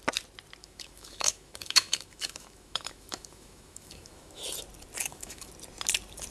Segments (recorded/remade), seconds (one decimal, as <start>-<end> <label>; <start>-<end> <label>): 0.0-0.6 recorded; 0.6-4.4 remade; 4.4-5.0 recorded; 5.0-5.5 remade; 5.5-6.3 recorded

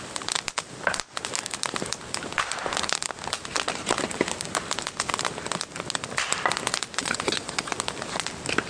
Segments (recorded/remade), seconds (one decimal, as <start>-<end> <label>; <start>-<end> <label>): 0.0-7.0 recorded; 7.0-7.7 remade; 7.7-8.7 recorded

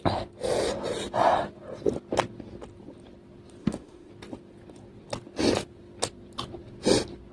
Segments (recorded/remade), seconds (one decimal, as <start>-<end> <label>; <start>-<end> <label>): 0.0-3.6 recorded; 3.6-4.1 remade; 4.1-7.3 recorded

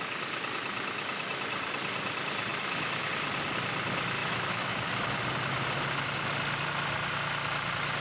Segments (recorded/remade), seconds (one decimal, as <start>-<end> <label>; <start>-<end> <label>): 0.0-2.5 recorded; 2.5-3.1 remade; 3.1-4.2 recorded; 4.2-4.8 remade; 4.8-8.0 recorded

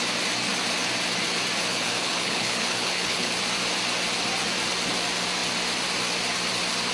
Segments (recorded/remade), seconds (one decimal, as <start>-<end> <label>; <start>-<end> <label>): 0.0-1.7 recorded; 1.7-3.3 remade; 3.3-6.9 recorded

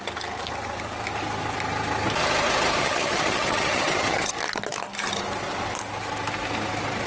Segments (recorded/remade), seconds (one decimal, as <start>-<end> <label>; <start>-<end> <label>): 0.0-2.8 recorded; 2.8-4.3 remade; 4.3-7.1 recorded